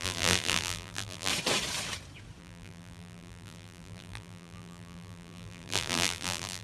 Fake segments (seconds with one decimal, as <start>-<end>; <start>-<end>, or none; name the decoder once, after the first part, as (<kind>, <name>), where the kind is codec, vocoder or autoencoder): 0.0-1.3 (vocoder, BigVGAN v2); 2.4-6.6

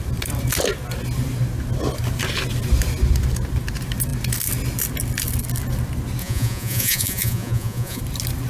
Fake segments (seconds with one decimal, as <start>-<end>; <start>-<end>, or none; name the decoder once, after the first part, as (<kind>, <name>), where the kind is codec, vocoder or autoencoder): 6.2-8.0 (vocoder, Vocos)

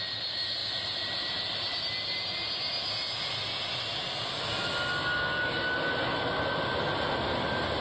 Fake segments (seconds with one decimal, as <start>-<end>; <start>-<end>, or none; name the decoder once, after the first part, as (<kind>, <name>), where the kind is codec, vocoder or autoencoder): 0.6-1.4 (vocoder, BigVGAN v2)

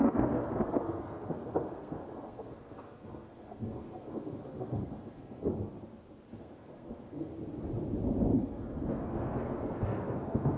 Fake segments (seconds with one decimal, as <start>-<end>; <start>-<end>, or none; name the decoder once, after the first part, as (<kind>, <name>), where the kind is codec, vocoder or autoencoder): 0.0-5.5 (codec, SNAC); 6.3-7.3; 8.4-10.6

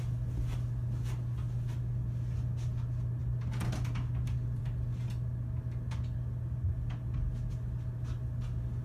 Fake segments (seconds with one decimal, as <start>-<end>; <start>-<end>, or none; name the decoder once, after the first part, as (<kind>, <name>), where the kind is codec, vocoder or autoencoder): none

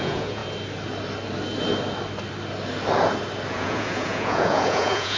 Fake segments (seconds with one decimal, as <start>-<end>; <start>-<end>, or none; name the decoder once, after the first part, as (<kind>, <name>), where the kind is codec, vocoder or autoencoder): 0.0-0.4 (vocoder, Vocos); 3.5-5.2

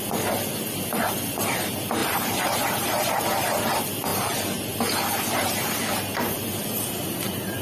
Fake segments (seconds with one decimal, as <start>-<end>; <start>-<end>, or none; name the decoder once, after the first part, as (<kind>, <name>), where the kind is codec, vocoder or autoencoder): 2.0-3.2 (vocoder, BigVGAN v2)